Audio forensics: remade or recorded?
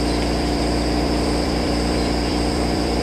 remade